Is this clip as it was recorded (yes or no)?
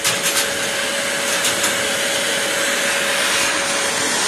yes